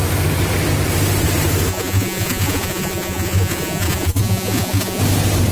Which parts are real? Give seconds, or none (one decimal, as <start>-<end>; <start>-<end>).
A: 0.0-1.7; 5.0-5.5

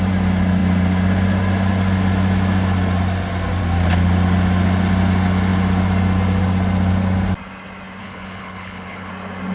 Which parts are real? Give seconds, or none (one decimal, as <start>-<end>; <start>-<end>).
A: 0.0-8.0; 9.1-9.5